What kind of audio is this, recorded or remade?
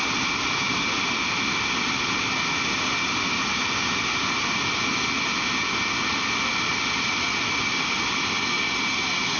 recorded